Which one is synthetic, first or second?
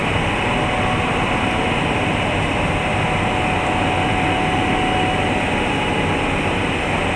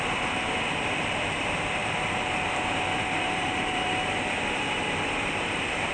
second